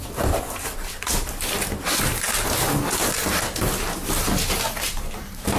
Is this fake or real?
real